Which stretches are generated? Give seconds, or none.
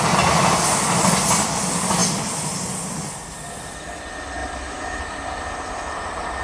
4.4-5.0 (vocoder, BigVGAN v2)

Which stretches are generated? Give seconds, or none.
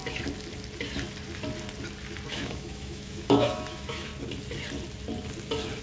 2.3-4.1 (autoencoder, DAC-VAE)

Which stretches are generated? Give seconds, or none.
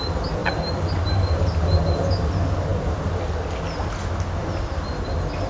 none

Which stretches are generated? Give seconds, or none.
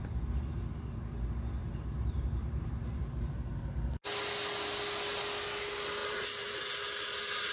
1.6-4.0 (vocoder, BigVGAN v2); 6.0-6.6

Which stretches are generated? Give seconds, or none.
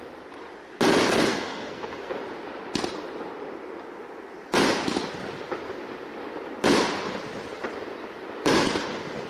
1.3-2.2 (codec, SNAC)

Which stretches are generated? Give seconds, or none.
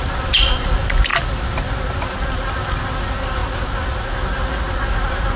none